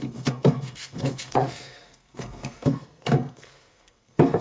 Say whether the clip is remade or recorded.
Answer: remade